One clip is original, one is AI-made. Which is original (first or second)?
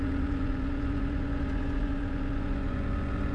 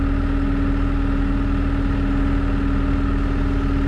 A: second